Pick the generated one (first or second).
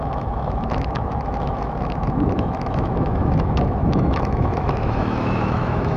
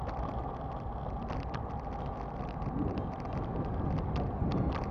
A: first